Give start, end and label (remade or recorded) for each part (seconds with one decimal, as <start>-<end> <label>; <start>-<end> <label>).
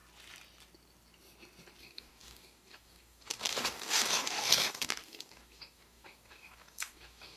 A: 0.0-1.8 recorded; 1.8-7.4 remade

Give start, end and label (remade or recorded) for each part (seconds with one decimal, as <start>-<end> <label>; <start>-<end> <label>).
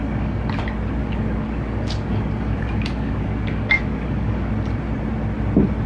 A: 0.0-0.6 remade; 0.6-1.0 recorded; 1.0-4.5 remade; 4.5-5.9 recorded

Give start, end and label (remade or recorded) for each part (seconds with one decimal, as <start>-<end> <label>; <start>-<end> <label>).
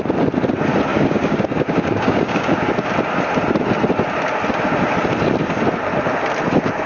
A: 0.0-0.9 recorded; 0.9-2.7 remade; 2.7-6.9 recorded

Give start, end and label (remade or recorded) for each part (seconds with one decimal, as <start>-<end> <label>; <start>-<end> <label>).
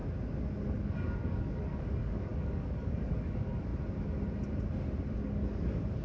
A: 0.0-0.8 recorded; 0.8-3.7 remade; 3.7-5.2 recorded; 5.2-6.0 remade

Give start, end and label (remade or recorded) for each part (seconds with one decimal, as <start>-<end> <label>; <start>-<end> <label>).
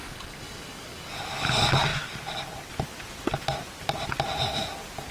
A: 0.0-1.1 remade; 1.1-5.1 recorded